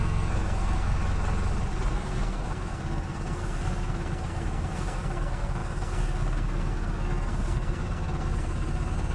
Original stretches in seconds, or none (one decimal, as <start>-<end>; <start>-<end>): 1.0-1.9

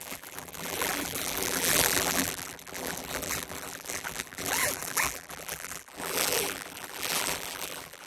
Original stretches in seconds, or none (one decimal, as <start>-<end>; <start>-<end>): none

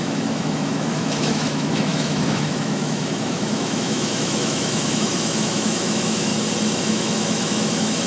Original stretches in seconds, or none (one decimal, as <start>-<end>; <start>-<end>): 6.3-6.8